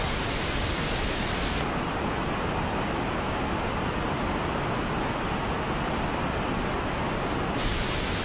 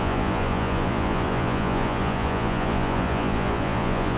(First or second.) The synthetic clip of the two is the second